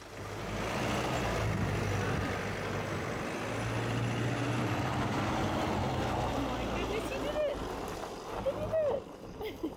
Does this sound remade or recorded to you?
recorded